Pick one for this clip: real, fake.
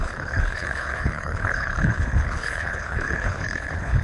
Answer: fake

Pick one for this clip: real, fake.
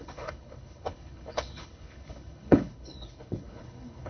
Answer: fake